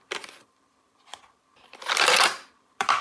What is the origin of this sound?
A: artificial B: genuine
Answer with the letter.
A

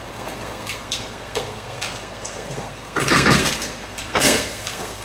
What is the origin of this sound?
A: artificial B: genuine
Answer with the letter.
A